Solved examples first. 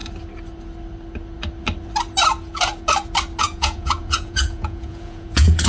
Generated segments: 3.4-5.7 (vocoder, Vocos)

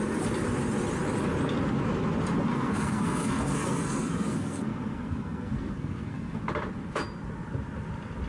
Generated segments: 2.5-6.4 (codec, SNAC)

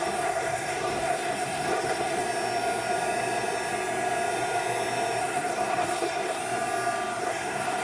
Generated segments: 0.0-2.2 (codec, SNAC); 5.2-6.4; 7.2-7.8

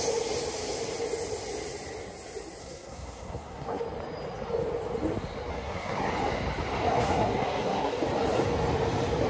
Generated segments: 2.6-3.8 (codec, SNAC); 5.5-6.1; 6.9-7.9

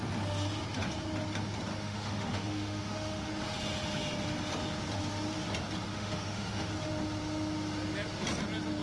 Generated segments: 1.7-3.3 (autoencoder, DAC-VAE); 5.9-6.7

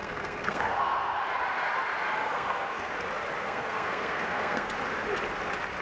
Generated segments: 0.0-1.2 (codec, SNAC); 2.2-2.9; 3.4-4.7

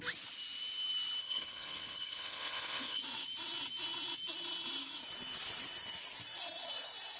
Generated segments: 1.2-3.0 (codec, HILCodec)

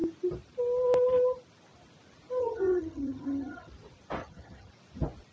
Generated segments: 2.4-3.7 (vocoder, HiFi-GAN); 4.2-4.7